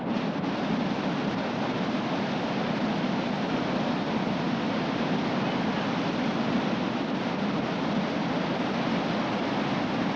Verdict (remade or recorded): recorded